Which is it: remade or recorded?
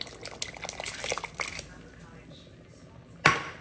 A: recorded